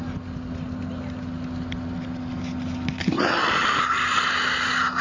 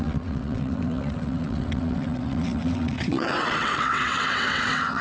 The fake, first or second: second